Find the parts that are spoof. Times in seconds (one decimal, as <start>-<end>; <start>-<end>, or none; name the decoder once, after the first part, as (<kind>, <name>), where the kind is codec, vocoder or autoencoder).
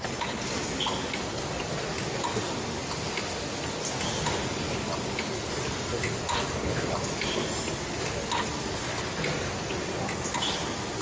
none